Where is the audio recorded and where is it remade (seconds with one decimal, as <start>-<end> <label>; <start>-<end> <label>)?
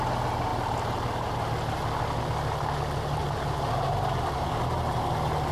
0.0-3.2 recorded; 3.2-4.6 remade; 4.6-5.5 recorded